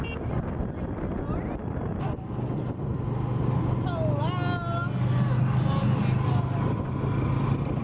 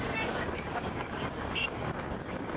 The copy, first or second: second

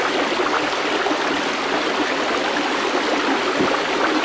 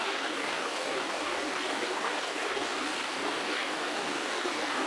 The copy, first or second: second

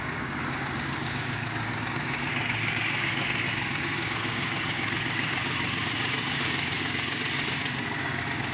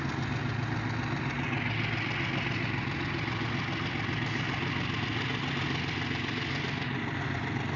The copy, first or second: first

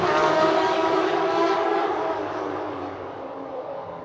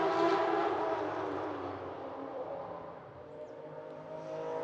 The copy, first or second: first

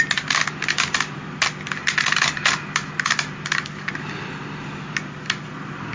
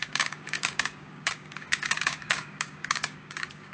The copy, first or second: second